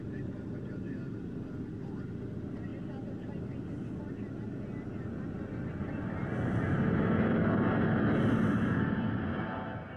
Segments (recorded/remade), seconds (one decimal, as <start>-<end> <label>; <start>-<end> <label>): 0.0-10.0 recorded